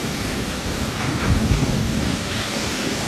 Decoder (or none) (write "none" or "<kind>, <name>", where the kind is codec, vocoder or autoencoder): codec, DAC